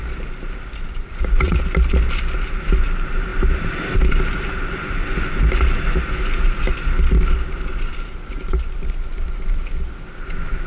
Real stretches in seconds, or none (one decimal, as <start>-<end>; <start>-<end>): 0.0-1.1; 1.6-10.7